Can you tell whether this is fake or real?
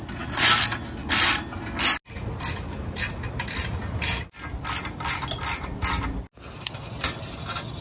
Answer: real